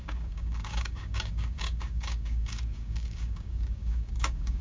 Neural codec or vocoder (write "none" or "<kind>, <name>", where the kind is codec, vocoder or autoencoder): codec, DAC